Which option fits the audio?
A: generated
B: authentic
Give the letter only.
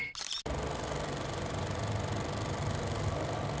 B